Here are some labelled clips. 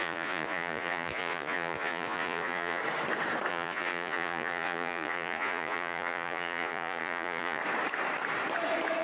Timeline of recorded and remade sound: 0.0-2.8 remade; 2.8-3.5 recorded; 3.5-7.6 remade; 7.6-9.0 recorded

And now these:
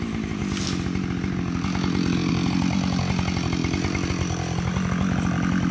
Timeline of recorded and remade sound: 0.0-5.7 recorded

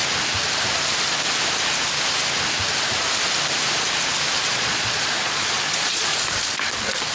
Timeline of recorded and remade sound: 0.0-4.3 recorded; 4.3-6.1 remade; 6.1-7.1 recorded

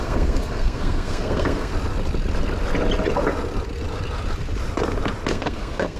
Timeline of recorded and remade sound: 0.0-1.7 remade; 1.7-5.3 recorded; 5.3-6.0 remade

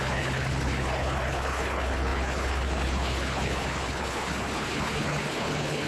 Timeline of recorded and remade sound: 0.0-5.9 remade

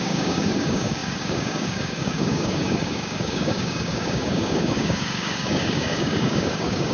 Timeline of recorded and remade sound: 0.0-6.9 remade

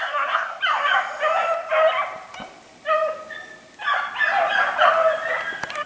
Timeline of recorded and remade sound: 0.0-0.6 remade; 0.6-5.9 recorded

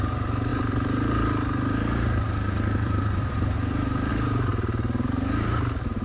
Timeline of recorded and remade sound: 0.0-4.5 remade; 4.5-5.1 recorded; 5.1-6.0 remade